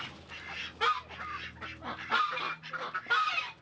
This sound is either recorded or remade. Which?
recorded